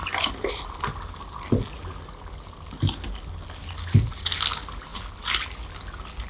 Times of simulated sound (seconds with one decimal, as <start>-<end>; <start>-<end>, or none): none